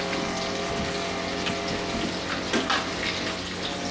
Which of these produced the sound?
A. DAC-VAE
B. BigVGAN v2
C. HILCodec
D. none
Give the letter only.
D